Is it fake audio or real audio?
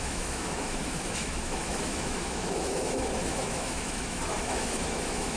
fake